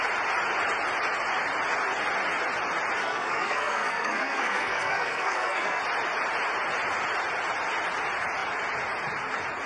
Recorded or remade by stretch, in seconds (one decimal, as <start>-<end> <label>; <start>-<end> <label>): 0.0-3.0 recorded; 3.0-5.8 remade; 5.8-9.7 recorded